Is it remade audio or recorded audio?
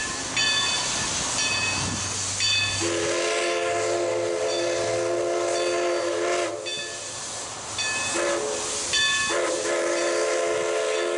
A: recorded